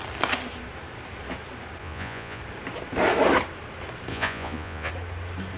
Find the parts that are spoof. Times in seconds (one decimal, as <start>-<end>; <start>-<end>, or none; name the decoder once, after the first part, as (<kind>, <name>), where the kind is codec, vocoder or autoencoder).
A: 1.8-2.4 (vocoder, Vocos); 4.1-4.9